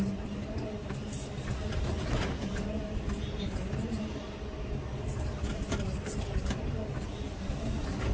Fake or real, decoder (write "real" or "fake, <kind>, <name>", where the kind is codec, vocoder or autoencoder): fake, vocoder, BigVGAN v2